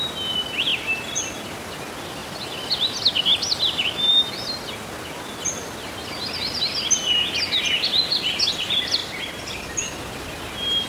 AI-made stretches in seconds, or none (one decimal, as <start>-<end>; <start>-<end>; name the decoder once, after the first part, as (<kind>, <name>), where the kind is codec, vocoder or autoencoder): 0.7-1.3 (vocoder, BigVGAN v2); 9.0-9.9